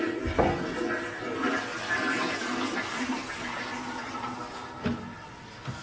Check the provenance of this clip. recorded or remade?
recorded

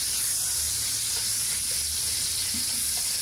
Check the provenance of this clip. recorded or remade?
recorded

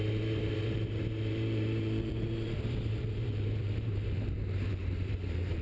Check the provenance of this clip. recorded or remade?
remade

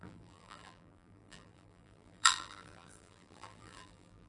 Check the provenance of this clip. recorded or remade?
remade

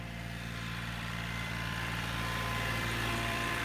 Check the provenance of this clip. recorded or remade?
remade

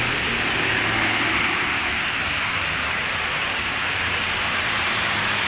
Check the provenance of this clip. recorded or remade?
remade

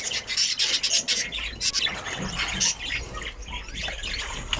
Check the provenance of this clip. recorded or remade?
recorded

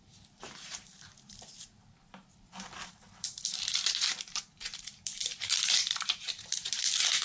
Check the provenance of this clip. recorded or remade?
remade